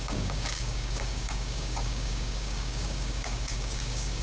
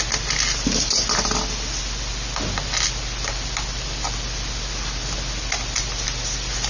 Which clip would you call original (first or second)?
second